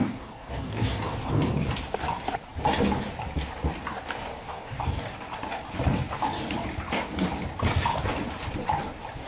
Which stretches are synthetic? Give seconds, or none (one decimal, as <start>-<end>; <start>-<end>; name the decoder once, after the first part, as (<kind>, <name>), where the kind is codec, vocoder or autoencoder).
0.0-1.7 (codec, DAC); 4.4-5.0